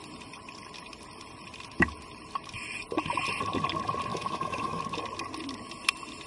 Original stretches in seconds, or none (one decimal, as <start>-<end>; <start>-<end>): 0.0-4.1; 4.8-6.3